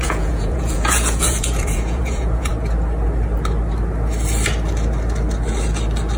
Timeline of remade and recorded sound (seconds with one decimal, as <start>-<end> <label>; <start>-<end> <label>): 0.0-2.5 remade; 2.5-6.2 recorded